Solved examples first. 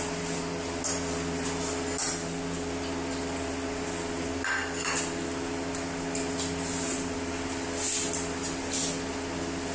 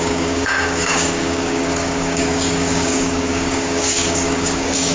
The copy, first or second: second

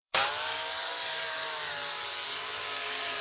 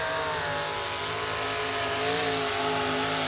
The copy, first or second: first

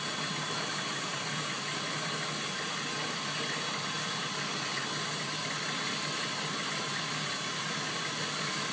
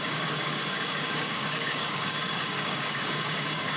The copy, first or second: second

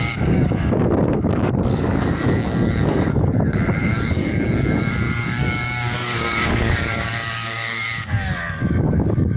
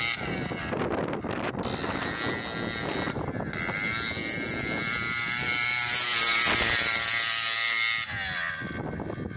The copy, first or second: first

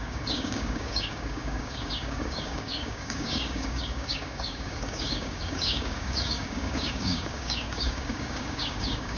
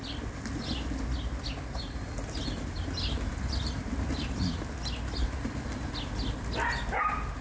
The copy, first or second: first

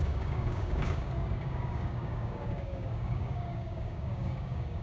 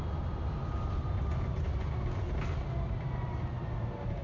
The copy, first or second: first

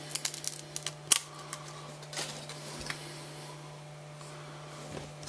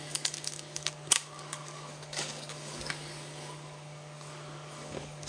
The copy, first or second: second